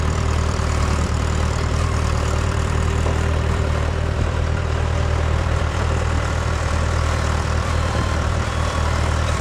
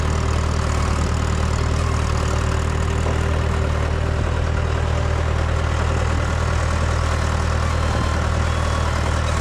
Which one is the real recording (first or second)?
second